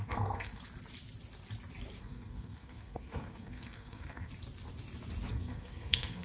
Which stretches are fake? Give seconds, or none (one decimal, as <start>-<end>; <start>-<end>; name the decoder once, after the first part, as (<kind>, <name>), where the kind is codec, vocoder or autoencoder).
0.0-0.6 (codec, SNAC); 2.0-4.3; 5.3-6.2